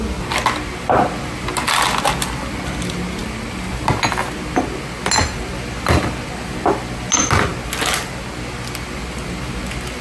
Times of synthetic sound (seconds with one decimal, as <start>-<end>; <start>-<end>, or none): none

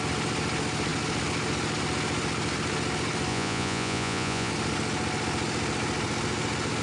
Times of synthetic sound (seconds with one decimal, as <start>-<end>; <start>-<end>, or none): 3.3-4.5

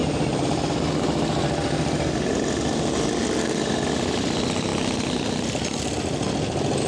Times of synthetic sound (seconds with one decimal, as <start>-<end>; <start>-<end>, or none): none

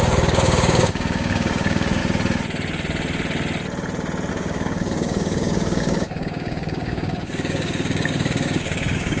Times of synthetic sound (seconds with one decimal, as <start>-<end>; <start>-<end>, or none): 0.0-2.0; 4.3-9.2

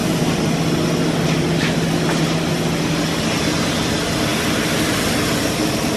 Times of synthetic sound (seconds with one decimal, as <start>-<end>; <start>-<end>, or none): none

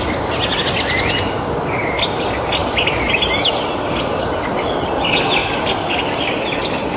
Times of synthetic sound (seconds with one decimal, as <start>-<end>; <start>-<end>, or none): none